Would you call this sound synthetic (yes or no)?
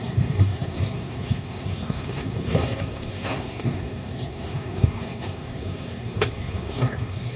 yes